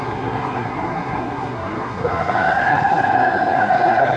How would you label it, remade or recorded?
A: remade